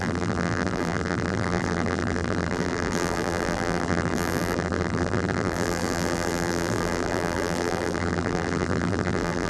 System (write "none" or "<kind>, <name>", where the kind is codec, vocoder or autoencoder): vocoder, BigVGAN v2